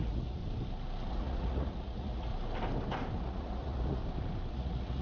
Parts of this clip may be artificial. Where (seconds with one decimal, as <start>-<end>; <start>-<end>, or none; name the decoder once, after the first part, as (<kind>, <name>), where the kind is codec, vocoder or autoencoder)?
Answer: 0.0-0.4 (vocoder, Vocos); 1.1-2.3; 3.2-4.0; 4.5-5.0